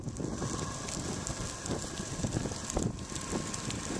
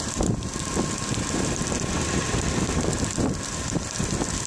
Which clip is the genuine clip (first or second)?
first